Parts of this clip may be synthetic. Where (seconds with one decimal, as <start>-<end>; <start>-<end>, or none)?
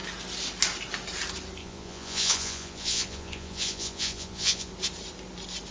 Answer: 1.6-4.7